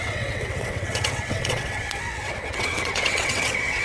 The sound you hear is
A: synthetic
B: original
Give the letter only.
A